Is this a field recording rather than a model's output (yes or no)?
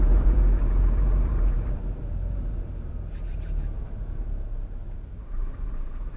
no